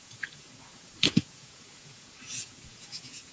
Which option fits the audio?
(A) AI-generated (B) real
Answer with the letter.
A